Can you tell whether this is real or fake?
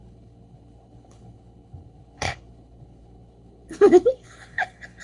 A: fake